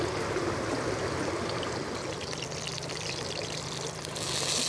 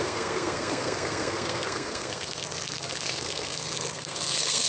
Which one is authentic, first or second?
first